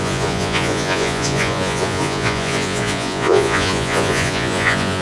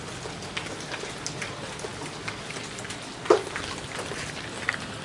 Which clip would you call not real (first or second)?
first